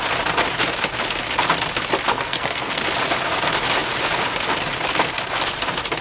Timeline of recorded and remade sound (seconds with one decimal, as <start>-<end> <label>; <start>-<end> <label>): 0.0-2.1 recorded; 2.1-2.8 remade; 2.8-6.0 recorded